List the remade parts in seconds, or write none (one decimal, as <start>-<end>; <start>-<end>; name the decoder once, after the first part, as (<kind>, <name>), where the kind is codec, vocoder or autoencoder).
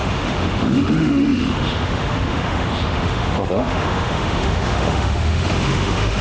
0.0-6.2 (autoencoder, DAC-VAE)